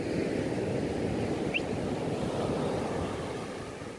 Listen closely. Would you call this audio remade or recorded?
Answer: recorded